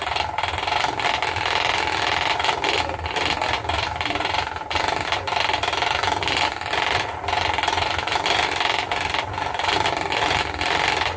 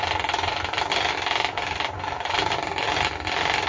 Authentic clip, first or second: second